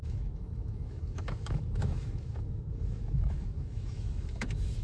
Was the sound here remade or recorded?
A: remade